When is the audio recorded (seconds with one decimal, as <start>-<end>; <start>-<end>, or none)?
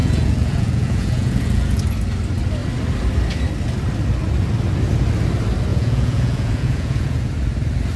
1.8-5.7; 7.3-8.0